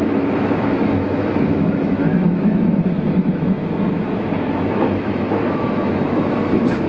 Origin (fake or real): fake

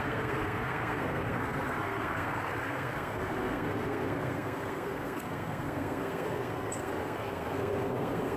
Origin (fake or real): fake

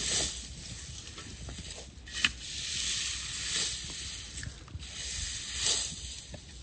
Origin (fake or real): real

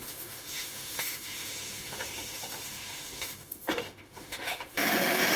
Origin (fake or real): fake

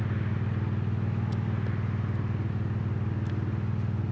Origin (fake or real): real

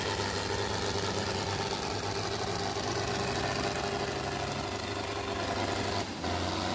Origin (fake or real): real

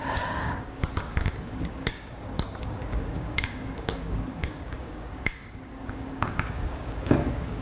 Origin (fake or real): fake